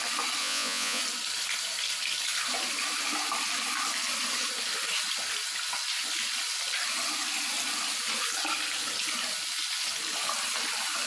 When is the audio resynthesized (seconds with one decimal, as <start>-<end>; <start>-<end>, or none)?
0.4-1.0